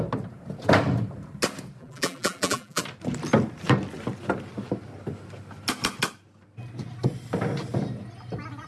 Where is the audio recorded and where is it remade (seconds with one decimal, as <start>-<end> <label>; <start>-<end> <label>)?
0.0-1.8 recorded; 1.8-2.8 remade; 2.8-8.7 recorded